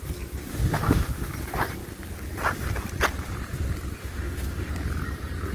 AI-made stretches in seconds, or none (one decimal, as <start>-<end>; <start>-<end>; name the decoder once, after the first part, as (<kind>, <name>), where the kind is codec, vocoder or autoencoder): 0.5-1.3 (autoencoder, DAC-VAE); 4.0-4.7